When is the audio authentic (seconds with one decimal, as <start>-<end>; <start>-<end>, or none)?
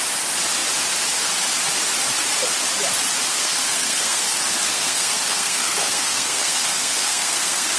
0.0-3.3